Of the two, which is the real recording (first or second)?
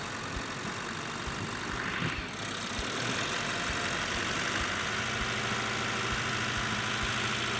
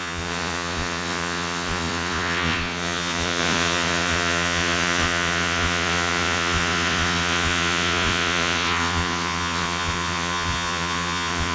first